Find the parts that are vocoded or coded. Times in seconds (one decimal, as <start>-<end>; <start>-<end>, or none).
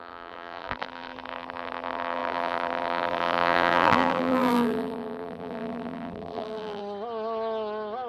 0.0-6.8